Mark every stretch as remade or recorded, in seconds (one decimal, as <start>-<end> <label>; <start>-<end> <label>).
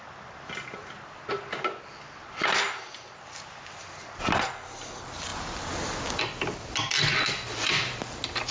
0.0-8.5 recorded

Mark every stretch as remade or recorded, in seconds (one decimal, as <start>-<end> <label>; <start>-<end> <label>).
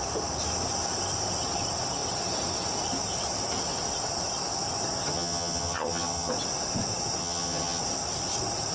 0.0-5.1 recorded; 5.1-6.3 remade; 6.3-7.2 recorded; 7.2-7.8 remade; 7.8-8.7 recorded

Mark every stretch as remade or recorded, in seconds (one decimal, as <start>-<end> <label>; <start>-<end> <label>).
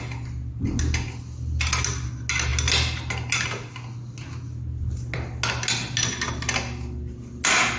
0.0-7.8 recorded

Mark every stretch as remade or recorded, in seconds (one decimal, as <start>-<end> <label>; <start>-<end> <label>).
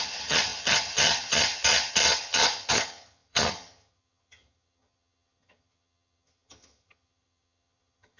0.0-8.2 remade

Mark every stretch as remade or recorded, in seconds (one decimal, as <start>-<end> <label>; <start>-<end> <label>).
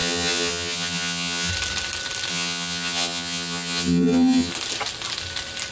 0.0-1.5 remade; 1.5-2.3 recorded; 2.3-4.5 remade; 4.5-5.7 recorded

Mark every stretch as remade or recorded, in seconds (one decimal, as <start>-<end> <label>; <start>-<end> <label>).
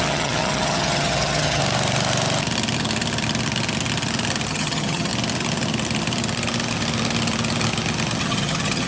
0.0-1.6 remade; 1.6-4.5 recorded; 4.5-5.1 remade; 5.1-8.2 recorded; 8.2-8.9 remade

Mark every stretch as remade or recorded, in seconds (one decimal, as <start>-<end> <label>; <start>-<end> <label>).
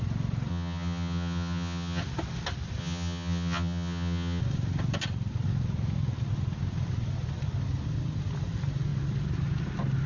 0.0-0.5 recorded; 0.5-2.0 remade; 2.0-2.8 recorded; 2.8-4.4 remade; 4.4-10.1 recorded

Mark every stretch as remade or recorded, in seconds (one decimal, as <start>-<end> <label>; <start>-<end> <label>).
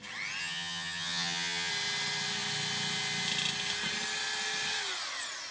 0.0-0.4 recorded; 0.4-1.7 remade; 1.7-5.5 recorded